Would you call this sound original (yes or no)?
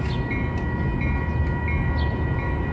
yes